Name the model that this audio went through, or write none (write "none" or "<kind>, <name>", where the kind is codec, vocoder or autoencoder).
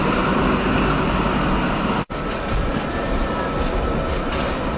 none